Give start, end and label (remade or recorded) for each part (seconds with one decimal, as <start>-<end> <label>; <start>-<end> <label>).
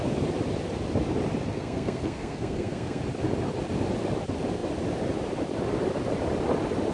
0.0-1.5 recorded; 1.5-3.0 remade; 3.0-6.9 recorded